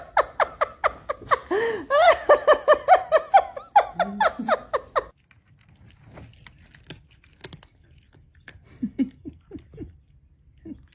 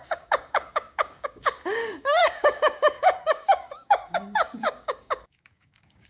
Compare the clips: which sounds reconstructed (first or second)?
second